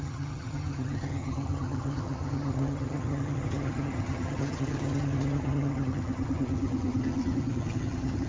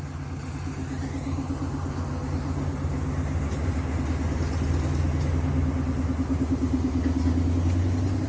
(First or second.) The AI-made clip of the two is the first